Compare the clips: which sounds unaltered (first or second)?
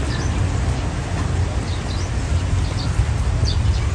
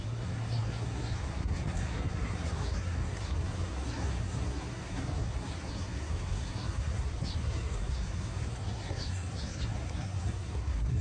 first